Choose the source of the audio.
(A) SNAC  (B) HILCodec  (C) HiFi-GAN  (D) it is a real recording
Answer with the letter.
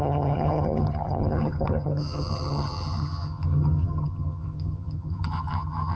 C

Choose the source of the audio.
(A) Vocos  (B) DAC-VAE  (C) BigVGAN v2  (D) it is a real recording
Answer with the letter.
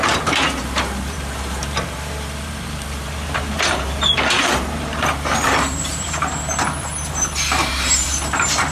C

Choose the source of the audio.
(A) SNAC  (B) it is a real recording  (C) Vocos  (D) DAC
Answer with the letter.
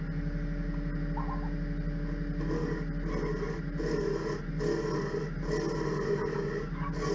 B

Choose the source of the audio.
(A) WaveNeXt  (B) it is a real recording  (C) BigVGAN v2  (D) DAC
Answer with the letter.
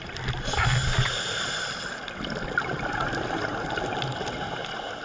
B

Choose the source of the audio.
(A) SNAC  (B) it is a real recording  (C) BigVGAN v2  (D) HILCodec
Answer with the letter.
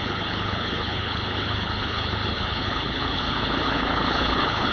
D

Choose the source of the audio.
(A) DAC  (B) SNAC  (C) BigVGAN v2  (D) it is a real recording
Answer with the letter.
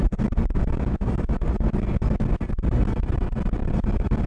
D